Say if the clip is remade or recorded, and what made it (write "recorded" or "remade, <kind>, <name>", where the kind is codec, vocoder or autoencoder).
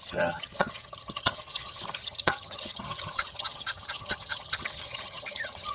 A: remade, vocoder, HiFi-GAN